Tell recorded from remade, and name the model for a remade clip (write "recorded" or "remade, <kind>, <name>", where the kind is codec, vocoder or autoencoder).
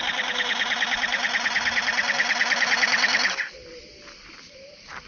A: recorded